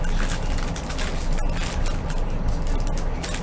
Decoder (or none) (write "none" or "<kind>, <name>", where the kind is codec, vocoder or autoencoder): none